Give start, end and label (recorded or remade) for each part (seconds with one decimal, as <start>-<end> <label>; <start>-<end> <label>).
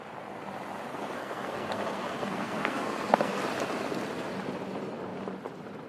0.0-0.9 recorded; 0.9-3.4 remade; 3.4-5.9 recorded